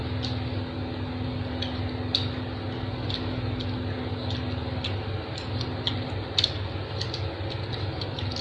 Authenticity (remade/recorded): recorded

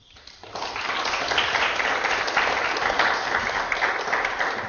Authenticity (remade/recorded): recorded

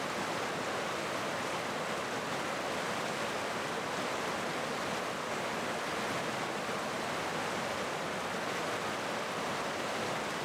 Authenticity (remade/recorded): recorded